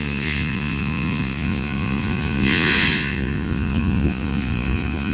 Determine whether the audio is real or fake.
fake